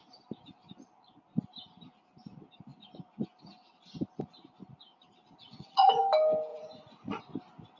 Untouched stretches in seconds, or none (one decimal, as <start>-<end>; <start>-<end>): 0.0-5.5; 6.0-6.5; 7.2-7.8